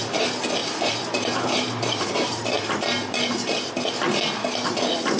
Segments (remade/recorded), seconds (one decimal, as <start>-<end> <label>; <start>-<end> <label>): 0.0-0.6 recorded; 0.6-3.7 remade; 3.7-5.2 recorded